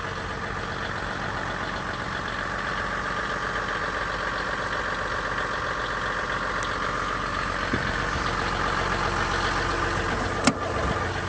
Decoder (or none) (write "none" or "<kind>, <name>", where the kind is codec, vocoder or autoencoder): none